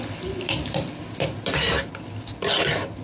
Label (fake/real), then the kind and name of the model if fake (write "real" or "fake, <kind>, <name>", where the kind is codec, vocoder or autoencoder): real